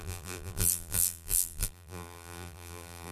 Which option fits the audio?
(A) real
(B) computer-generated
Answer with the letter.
B